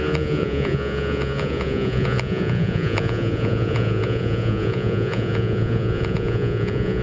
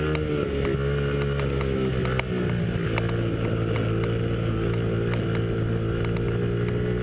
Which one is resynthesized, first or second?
first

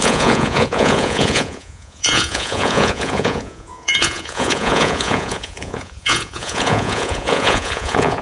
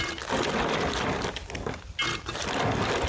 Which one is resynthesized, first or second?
first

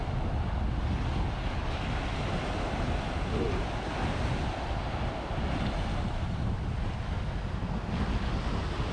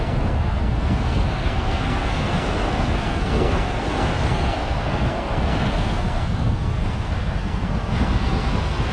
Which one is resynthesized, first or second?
second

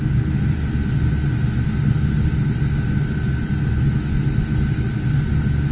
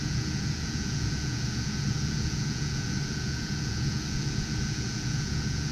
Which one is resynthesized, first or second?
second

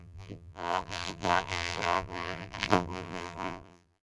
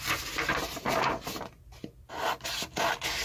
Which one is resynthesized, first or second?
first